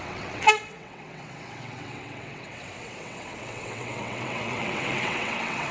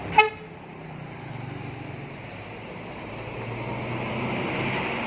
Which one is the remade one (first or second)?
first